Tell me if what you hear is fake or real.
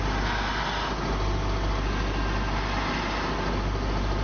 real